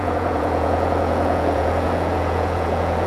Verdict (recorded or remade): remade